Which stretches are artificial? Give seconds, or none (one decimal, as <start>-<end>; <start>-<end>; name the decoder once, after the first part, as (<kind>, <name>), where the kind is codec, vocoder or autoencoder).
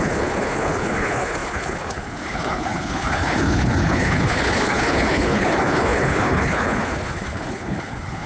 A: 0.0-8.3 (codec, HILCodec)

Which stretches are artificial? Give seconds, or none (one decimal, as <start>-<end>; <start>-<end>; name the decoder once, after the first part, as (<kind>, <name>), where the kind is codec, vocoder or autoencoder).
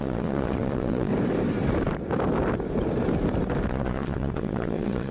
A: 0.0-1.1 (vocoder, Vocos); 3.7-5.1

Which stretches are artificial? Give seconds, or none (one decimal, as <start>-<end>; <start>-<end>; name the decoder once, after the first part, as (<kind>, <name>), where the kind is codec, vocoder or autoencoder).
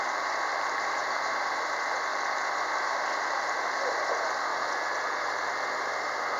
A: 0.0-2.1 (vocoder, BigVGAN v2); 2.7-4.5; 5.2-6.4